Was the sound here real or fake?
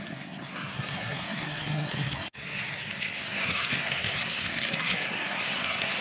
fake